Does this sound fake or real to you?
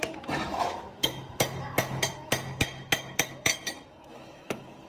fake